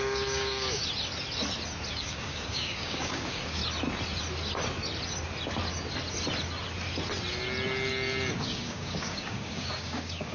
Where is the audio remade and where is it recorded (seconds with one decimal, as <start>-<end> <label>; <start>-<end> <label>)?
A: 0.0-0.8 remade; 0.8-1.9 recorded; 1.9-3.6 remade; 3.6-8.4 recorded; 8.4-10.3 remade